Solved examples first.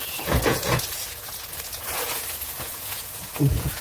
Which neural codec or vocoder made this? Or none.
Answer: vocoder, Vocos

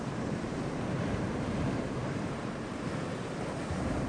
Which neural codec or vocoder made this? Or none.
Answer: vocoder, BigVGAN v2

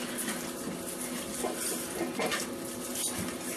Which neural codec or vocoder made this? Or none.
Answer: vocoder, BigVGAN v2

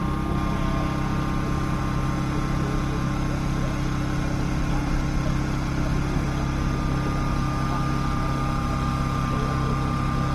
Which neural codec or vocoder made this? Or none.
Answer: none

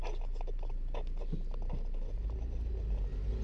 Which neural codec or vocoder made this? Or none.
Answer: none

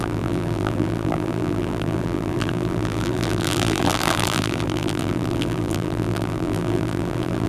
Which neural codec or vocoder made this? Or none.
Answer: vocoder, BigVGAN v2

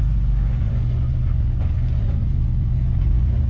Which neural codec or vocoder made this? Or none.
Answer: vocoder, Vocos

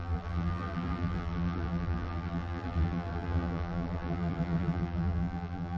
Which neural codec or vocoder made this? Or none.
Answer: vocoder, BigVGAN v2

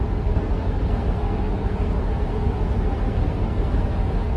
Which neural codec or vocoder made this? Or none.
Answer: codec, SNAC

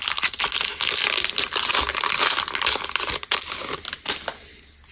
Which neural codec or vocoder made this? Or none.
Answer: none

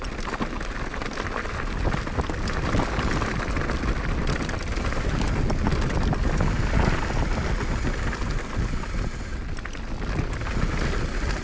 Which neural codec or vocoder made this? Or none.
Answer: none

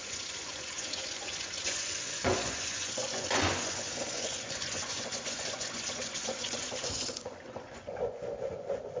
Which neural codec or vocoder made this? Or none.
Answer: vocoder, Vocos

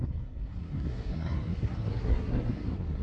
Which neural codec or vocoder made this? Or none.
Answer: codec, SNAC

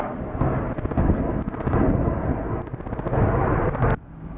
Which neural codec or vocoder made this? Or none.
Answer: none